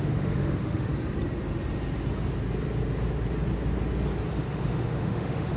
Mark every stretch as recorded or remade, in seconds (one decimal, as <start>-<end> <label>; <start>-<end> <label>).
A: 0.0-0.9 remade; 0.9-4.3 recorded; 4.3-5.6 remade